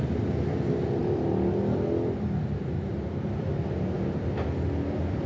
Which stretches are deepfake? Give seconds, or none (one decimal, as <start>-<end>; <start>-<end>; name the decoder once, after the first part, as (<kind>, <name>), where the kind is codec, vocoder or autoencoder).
none

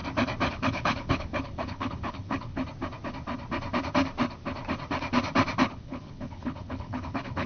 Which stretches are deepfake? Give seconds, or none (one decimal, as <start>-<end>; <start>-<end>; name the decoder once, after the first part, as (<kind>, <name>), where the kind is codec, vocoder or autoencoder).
0.5-2.6 (codec, HILCodec); 5.7-7.5

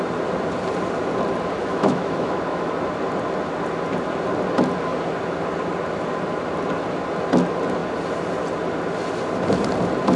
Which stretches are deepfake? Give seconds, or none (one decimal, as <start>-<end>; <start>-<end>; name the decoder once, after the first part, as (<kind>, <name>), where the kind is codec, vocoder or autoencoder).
1.6-2.7 (autoencoder, DAC-VAE)

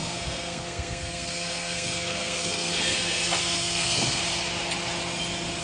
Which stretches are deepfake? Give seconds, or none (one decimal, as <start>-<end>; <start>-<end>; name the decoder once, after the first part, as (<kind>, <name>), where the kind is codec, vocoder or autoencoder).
0.0-4.2 (codec, SNAC)

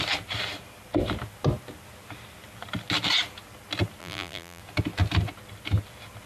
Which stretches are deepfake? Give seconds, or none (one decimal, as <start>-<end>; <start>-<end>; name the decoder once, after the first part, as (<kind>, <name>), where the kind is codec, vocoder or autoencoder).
4.0-4.6 (vocoder, BigVGAN v2)